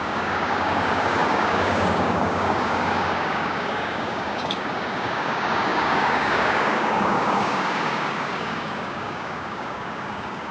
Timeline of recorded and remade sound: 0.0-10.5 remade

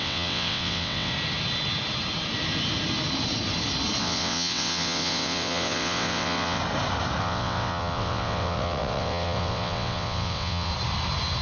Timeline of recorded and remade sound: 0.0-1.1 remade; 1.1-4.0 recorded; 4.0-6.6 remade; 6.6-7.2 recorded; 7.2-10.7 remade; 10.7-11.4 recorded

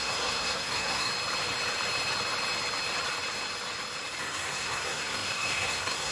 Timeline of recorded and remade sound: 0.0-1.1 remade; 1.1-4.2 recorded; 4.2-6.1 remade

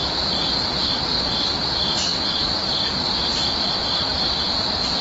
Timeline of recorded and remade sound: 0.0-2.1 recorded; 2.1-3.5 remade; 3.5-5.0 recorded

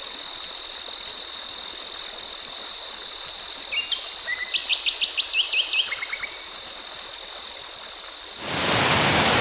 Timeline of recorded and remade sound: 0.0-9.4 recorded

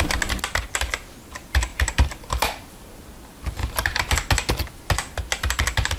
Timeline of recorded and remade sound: 0.0-1.7 recorded; 1.7-3.0 remade; 3.0-3.6 recorded; 3.6-4.1 remade; 4.1-6.0 recorded

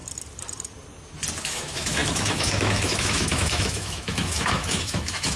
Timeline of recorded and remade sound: 0.0-1.4 recorded; 1.4-5.4 remade